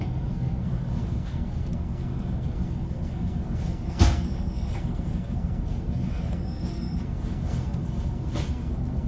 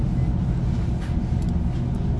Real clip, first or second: second